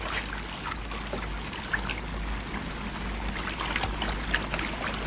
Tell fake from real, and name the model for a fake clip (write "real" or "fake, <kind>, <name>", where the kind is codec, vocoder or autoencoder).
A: real